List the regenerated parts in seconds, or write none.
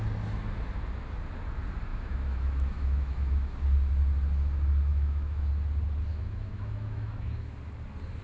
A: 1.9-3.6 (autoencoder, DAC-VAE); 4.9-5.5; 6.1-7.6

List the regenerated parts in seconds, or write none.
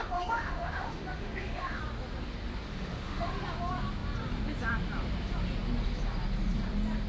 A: 0.0-1.8 (autoencoder, DAC-VAE); 2.7-3.3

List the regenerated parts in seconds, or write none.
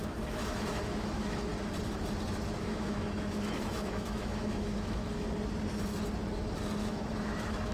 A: 0.0-1.5 (autoencoder, DAC-VAE); 2.6-5.0; 6.8-7.7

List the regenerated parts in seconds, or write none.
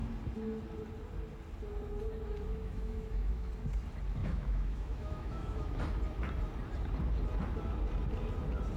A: 2.5-3.5 (autoencoder, DAC-VAE); 4.2-5.8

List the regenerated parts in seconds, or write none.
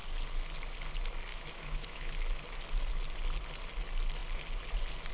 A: 1.3-2.1 (autoencoder, DAC-VAE)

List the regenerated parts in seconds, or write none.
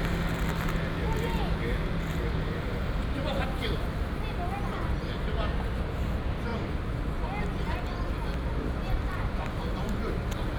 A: none